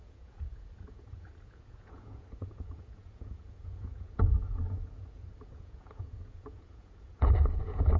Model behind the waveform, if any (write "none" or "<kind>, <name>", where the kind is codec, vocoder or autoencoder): vocoder, Vocos